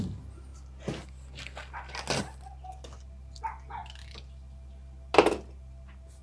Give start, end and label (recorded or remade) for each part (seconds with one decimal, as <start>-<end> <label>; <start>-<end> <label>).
0.0-6.2 recorded